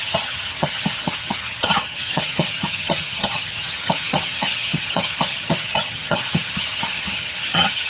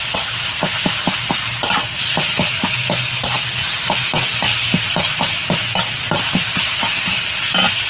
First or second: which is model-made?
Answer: first